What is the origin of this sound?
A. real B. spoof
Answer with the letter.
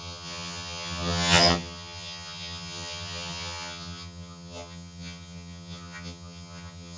B